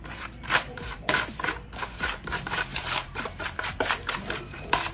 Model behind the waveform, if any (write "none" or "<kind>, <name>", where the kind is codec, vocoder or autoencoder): vocoder, BigVGAN v2